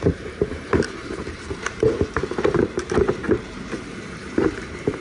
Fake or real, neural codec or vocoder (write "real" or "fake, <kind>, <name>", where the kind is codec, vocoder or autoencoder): fake, vocoder, BigVGAN v2